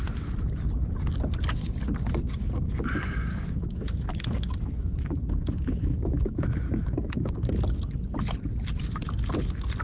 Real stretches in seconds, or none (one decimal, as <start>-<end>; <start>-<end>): 0.0-3.2; 7.3-9.8